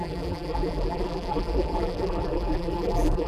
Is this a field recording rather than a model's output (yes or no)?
no